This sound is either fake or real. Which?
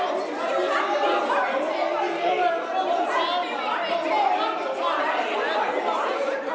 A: real